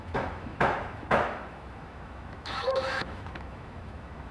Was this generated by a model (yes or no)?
yes